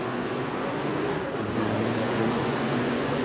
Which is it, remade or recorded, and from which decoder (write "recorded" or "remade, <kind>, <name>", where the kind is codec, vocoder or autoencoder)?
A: remade, vocoder, Vocos